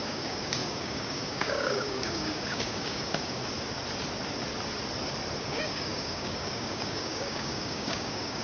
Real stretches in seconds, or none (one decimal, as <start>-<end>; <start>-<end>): 3.4-5.4